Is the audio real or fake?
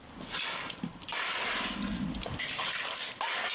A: real